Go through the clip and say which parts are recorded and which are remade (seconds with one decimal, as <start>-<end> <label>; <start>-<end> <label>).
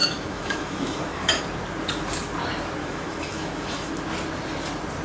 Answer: 0.0-1.4 remade; 1.4-2.8 recorded; 2.8-3.9 remade; 3.9-5.0 recorded